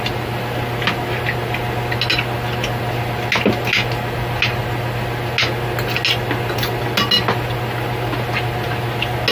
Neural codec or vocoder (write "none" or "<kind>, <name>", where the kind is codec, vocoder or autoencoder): none